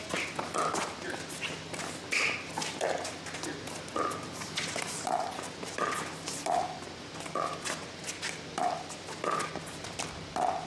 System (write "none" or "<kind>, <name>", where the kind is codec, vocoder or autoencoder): none